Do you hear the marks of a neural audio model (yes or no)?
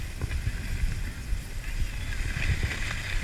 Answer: no